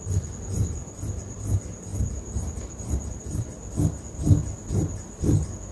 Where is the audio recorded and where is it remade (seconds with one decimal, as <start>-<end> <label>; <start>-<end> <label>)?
0.0-5.7 recorded

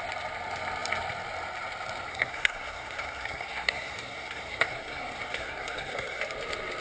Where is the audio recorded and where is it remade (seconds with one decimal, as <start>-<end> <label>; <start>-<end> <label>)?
0.0-2.1 recorded; 2.1-6.2 remade; 6.2-6.8 recorded

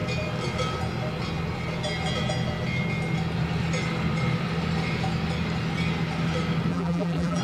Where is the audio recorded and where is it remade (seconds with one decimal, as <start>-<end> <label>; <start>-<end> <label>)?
0.0-6.7 recorded; 6.7-7.4 remade

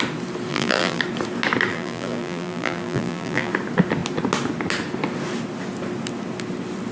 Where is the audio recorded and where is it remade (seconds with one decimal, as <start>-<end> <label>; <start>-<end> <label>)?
0.0-0.5 recorded; 0.5-1.0 remade; 1.0-1.7 recorded; 1.7-3.5 remade; 3.5-6.9 recorded

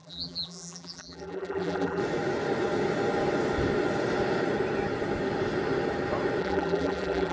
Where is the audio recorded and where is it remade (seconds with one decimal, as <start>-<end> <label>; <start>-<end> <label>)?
0.0-2.0 remade; 2.0-6.4 recorded; 6.4-7.3 remade

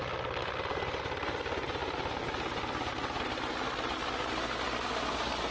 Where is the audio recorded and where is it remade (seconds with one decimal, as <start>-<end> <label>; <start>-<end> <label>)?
0.0-5.5 recorded

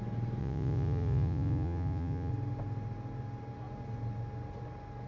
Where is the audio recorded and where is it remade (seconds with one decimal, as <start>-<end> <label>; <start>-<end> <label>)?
0.0-0.4 recorded; 0.4-2.3 remade; 2.3-5.1 recorded

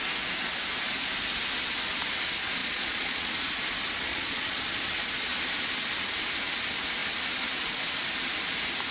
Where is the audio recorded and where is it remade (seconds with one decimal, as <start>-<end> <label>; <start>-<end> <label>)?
0.0-2.6 recorded; 2.6-3.3 remade; 3.3-4.1 recorded; 4.1-4.6 remade; 4.6-8.9 recorded